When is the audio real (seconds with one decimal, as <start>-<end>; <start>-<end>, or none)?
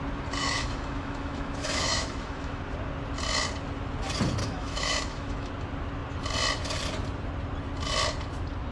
0.0-0.4; 2.6-4.4; 5.5-8.7